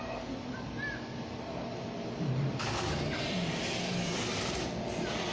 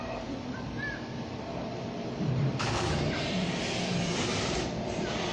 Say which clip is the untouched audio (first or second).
first